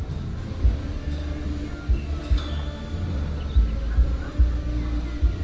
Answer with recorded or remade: recorded